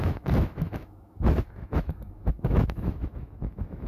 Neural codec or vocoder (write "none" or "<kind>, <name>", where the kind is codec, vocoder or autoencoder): autoencoder, DAC-VAE